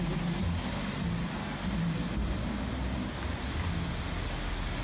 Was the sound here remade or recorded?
recorded